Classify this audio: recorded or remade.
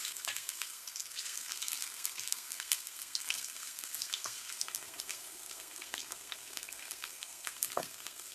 remade